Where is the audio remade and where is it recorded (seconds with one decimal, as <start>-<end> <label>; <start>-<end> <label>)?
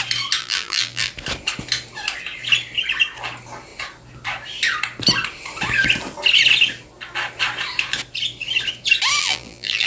0.0-0.4 recorded; 0.4-1.1 remade; 1.1-9.2 recorded; 9.2-9.9 remade